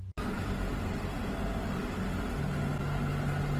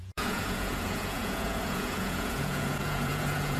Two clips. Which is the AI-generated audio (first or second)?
second